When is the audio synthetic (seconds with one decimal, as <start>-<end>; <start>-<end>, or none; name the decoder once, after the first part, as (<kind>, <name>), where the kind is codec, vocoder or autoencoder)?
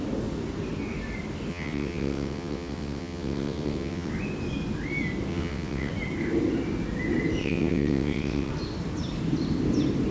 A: 1.5-4.1 (vocoder, WaveNeXt); 5.3-5.9; 7.4-8.5